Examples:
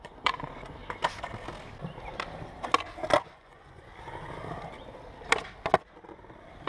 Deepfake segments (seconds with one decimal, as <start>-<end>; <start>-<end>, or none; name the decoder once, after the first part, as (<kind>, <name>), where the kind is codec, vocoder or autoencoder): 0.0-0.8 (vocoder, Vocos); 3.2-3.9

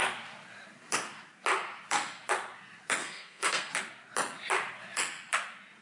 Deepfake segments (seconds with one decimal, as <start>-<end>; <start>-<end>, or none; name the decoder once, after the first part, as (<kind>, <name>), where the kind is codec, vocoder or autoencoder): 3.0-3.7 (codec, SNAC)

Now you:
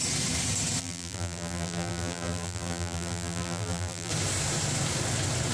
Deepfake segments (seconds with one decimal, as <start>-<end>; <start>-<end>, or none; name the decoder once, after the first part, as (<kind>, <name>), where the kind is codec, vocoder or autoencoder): 0.8-4.1 (vocoder, BigVGAN v2)

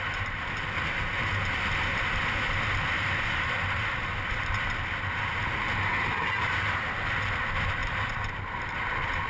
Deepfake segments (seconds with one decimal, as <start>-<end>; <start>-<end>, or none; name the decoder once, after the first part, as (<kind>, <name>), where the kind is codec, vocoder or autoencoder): none

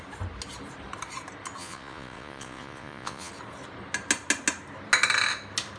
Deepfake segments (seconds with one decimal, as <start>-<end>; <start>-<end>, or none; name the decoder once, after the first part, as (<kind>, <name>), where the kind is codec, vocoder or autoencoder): 1.6-3.3 (vocoder, Vocos)